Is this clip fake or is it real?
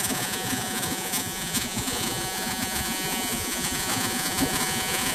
fake